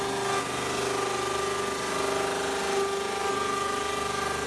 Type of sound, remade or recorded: recorded